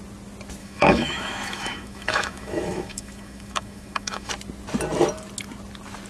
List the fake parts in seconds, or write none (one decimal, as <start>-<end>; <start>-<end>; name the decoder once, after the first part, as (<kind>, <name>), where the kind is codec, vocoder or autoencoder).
0.6-4.3 (autoencoder, DAC-VAE)